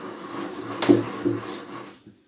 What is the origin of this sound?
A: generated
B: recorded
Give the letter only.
B